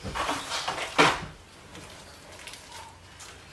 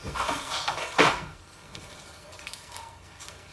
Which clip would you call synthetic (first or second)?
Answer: second